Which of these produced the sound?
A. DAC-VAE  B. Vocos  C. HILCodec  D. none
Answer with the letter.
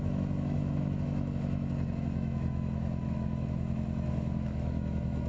A